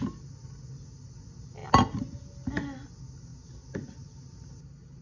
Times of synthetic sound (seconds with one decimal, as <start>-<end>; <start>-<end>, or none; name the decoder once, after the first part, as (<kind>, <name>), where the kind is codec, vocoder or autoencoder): none